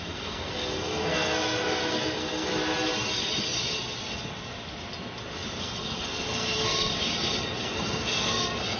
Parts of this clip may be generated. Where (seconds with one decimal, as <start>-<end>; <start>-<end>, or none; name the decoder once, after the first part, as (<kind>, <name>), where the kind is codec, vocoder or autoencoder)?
0.0-2.5 (codec, SNAC); 5.6-6.9; 7.6-8.8